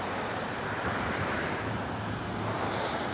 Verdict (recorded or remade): remade